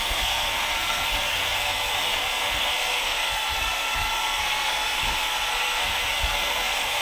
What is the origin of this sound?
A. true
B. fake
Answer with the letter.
B